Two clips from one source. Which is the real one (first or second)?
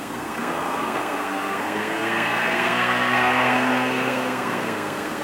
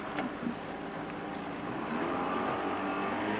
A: second